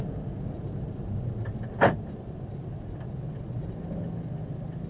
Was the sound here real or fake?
real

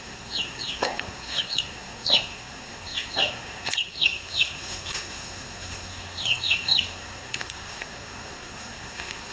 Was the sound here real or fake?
fake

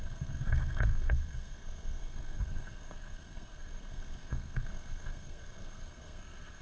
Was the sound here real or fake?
fake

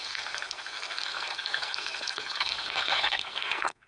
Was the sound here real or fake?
fake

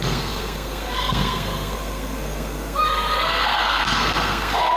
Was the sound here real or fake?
fake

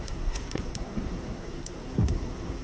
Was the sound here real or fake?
fake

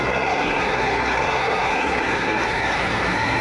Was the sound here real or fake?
fake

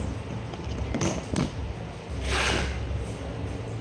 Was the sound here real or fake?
real